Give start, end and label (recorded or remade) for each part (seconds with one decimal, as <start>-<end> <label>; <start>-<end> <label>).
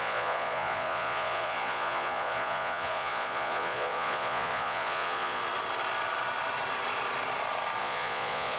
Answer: 0.0-5.4 remade; 5.4-7.8 recorded; 7.8-8.6 remade